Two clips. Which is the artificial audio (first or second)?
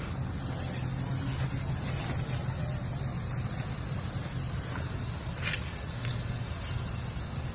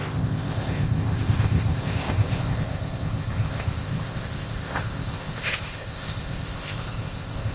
second